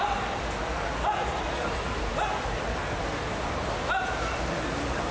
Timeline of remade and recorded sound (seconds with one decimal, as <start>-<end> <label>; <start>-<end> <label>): 0.0-5.1 recorded